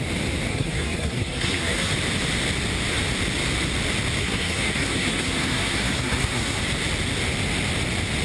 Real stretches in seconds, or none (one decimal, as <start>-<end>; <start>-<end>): 0.0-0.5; 1.9-4.2; 6.6-8.2